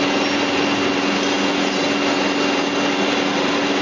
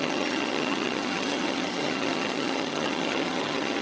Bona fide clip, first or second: first